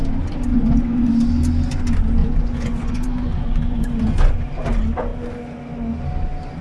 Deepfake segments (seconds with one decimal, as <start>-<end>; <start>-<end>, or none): 0.5-1.1; 2.2-4.4